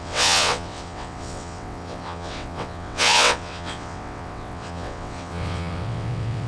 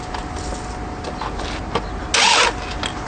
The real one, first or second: second